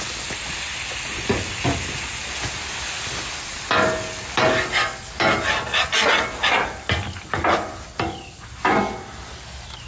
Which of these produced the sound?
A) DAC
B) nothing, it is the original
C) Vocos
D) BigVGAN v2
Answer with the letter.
B